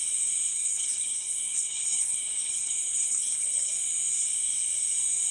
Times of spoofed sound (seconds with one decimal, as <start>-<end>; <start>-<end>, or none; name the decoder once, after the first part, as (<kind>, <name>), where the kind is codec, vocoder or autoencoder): 0.5-3.7 (codec, HILCodec)